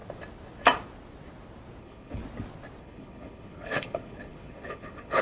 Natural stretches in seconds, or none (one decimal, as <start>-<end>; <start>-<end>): 0.0-1.8; 2.2-2.8

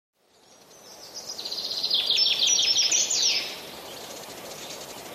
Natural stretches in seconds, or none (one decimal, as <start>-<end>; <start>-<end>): 0.0-5.1

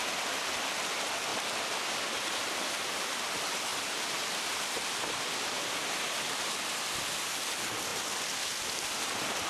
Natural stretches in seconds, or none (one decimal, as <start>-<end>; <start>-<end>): 0.0-3.7; 7.3-9.5